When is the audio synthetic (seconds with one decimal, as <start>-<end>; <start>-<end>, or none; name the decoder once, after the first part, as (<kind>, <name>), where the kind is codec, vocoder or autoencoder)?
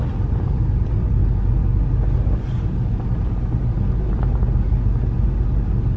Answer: none